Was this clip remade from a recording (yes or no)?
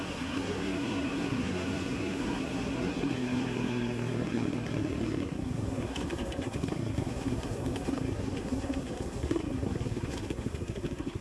yes